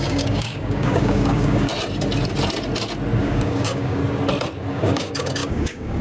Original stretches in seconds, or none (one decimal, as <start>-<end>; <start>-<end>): 1.7-3.2; 4.0-4.7